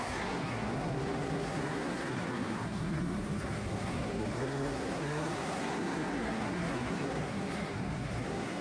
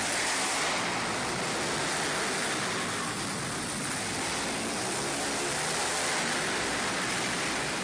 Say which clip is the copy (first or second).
first